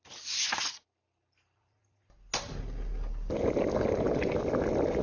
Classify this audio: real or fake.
real